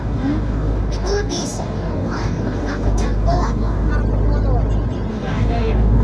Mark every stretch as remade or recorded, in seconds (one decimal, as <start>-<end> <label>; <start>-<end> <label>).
0.0-3.9 remade; 3.9-5.1 recorded; 5.1-6.0 remade